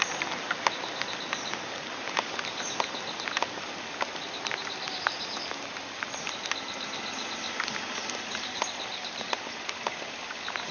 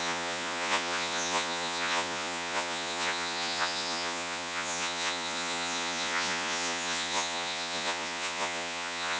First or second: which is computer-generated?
second